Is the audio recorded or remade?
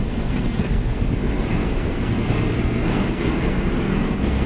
remade